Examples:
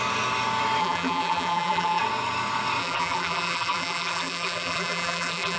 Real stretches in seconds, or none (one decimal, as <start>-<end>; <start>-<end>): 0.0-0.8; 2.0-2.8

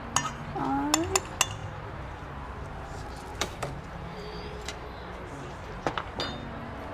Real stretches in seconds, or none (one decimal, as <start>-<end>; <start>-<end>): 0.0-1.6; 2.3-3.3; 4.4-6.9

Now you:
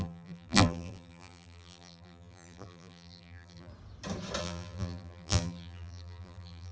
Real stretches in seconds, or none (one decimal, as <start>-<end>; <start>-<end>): 3.7-4.4